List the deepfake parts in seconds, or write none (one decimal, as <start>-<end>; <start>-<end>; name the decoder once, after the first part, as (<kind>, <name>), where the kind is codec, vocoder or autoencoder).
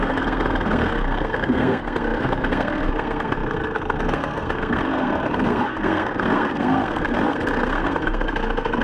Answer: 0.0-8.8 (codec, SNAC)